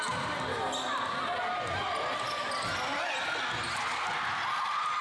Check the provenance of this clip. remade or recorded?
recorded